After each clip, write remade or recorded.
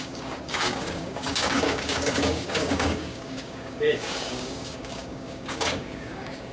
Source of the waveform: remade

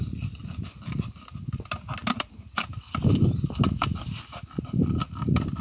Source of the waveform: recorded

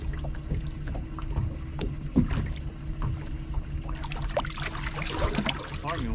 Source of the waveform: recorded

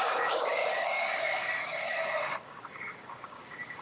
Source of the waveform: remade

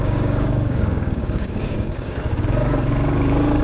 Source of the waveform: remade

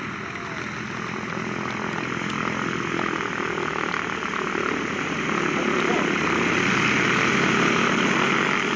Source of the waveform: recorded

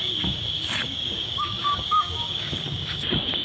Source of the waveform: remade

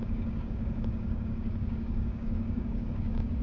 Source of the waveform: remade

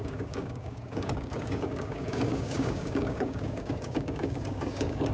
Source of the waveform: remade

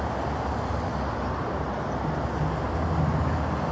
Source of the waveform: recorded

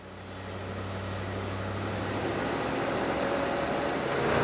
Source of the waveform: recorded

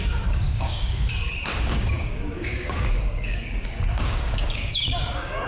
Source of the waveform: remade